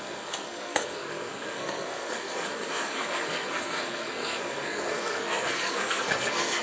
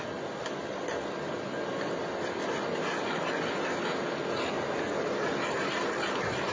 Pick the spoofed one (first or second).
first